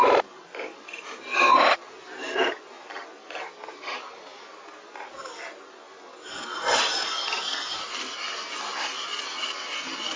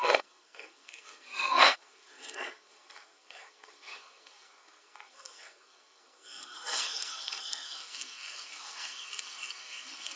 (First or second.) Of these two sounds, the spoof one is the second